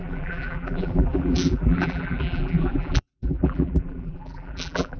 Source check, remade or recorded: remade